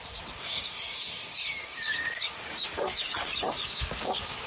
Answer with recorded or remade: remade